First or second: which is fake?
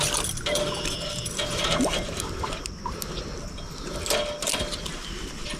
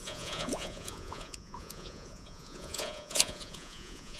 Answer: second